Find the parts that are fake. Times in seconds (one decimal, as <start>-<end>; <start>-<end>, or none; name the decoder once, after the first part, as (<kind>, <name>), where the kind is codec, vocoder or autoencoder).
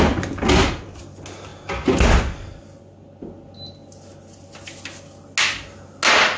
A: none